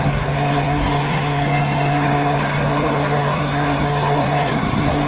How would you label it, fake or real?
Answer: fake